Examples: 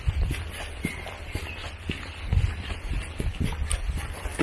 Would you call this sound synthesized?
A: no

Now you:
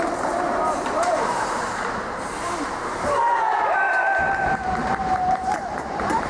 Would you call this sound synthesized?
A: yes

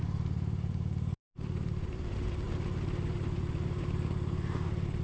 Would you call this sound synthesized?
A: yes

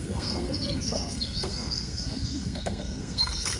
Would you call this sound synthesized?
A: yes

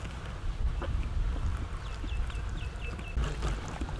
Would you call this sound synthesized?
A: no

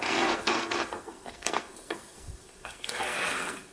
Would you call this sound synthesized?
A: yes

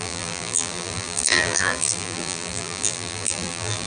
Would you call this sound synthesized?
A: yes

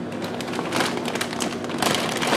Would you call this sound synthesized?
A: no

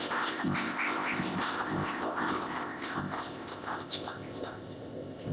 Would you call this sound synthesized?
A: yes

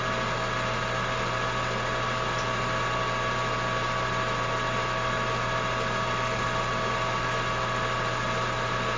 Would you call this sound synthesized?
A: no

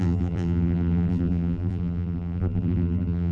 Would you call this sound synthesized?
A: yes